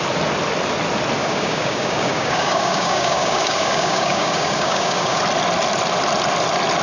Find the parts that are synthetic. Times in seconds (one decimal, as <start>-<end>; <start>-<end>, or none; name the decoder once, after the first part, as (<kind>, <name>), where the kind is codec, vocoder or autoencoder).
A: 1.2-5.2 (codec, DAC)